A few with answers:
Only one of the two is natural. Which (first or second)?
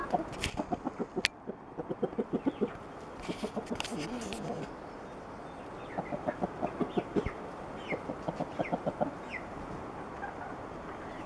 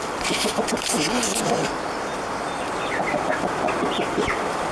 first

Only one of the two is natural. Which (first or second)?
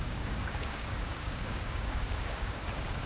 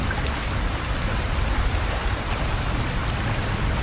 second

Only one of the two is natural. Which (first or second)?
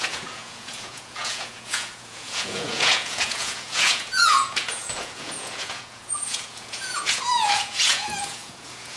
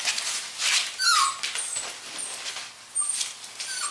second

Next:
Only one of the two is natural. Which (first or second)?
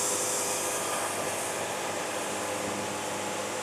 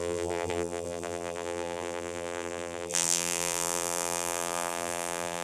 first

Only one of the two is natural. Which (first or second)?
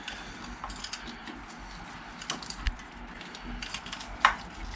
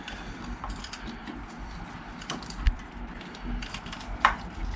first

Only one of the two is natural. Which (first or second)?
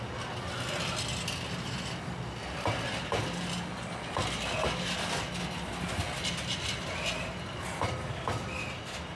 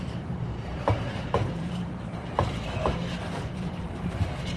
first